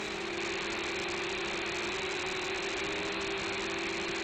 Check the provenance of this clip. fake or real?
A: real